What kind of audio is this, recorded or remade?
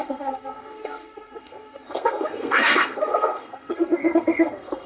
remade